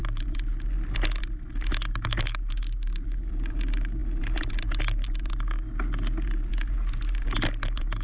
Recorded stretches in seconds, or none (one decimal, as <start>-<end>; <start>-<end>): 0.0-8.0